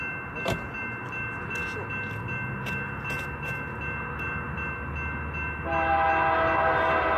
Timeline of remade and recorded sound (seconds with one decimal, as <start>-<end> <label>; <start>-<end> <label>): 0.0-7.2 recorded